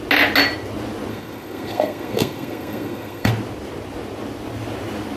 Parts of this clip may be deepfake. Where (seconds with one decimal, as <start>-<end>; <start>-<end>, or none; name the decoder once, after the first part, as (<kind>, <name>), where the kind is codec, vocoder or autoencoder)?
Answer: 1.1-3.3 (codec, SNAC)